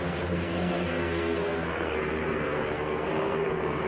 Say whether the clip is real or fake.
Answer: fake